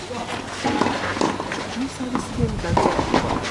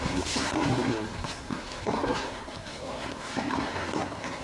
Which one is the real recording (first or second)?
first